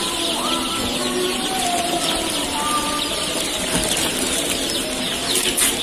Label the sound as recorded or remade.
recorded